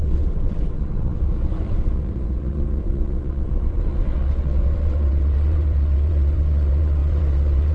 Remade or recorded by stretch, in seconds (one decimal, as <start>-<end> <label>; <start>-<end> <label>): 0.0-7.7 remade